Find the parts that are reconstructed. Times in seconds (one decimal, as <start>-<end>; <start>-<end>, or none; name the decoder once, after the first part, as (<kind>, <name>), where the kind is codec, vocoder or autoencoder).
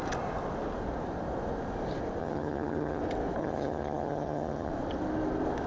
2.2-3.0 (vocoder, HiFi-GAN); 3.4-4.7